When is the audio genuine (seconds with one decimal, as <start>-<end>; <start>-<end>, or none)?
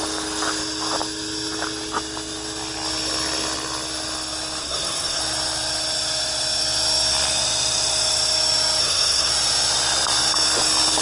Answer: 0.0-4.6; 5.2-8.8; 9.3-11.0